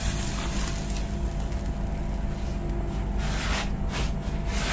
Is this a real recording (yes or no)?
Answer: yes